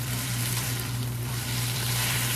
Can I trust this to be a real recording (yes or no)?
no